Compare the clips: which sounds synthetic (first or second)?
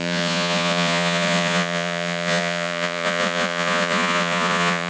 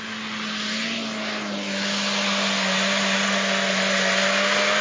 first